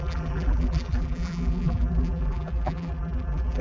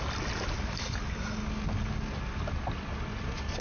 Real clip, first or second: second